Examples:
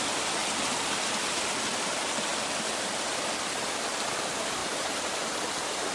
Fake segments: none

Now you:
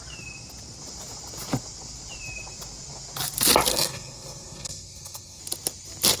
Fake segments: 3.7-5.4 (codec, SNAC)

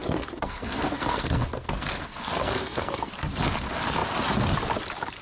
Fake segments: 0.0-3.1 (codec, SNAC)

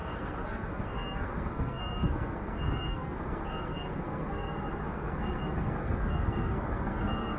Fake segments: 0.0-7.4 (codec, SNAC)

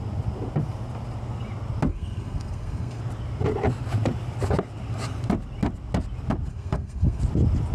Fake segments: 1.9-3.0 (codec, SNAC); 6.5-7.2

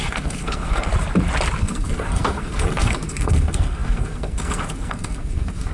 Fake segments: 0.0-0.9 (codec, SNAC); 1.6-5.7

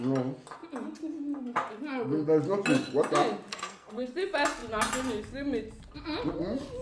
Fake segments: 3.5-4.1 (codec, SNAC)